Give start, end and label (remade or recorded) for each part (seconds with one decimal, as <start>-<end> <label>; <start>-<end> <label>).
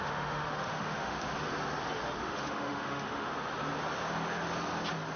0.0-1.5 remade; 1.5-2.2 recorded; 2.2-3.3 remade; 3.3-5.2 recorded